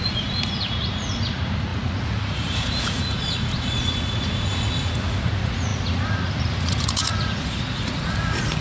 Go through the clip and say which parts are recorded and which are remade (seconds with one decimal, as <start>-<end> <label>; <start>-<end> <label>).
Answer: 0.0-8.6 remade